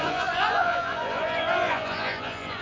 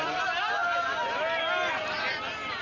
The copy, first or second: first